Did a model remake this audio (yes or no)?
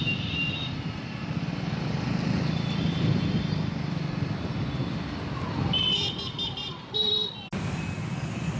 no